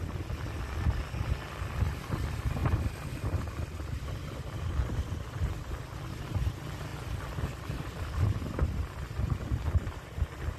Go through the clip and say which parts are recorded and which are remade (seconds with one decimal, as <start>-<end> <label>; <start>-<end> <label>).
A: 0.0-6.9 recorded; 6.9-10.6 remade